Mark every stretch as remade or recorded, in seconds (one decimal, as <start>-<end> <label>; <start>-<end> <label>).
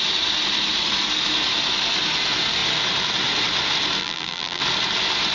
0.0-4.0 recorded; 4.0-4.6 remade; 4.6-5.3 recorded